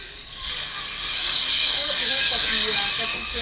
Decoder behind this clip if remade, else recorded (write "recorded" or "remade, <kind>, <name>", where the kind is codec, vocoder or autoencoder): remade, codec, DAC